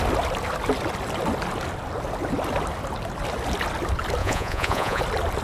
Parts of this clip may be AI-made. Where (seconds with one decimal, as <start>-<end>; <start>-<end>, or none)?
4.2-5.0